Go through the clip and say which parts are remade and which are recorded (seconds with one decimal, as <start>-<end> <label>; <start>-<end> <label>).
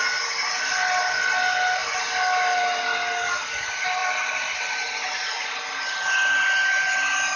0.0-4.0 recorded; 4.0-4.6 remade; 4.6-7.4 recorded